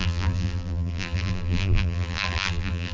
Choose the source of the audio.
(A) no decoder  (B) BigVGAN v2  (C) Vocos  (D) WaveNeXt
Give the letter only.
B